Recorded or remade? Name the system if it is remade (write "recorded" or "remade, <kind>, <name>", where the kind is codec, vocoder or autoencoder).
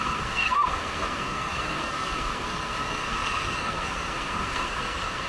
remade, codec, SNAC